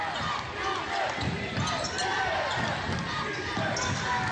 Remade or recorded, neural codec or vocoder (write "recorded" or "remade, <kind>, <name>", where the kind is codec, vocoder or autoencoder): recorded